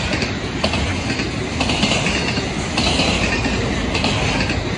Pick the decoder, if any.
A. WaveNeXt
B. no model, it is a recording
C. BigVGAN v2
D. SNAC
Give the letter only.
B